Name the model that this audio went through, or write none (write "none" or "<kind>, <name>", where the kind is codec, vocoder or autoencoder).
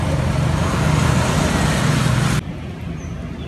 none